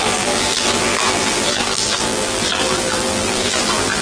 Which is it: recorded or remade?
remade